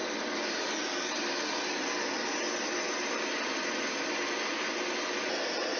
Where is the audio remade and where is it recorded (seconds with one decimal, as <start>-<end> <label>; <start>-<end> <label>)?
0.0-5.8 recorded